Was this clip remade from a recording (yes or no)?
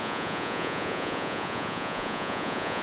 yes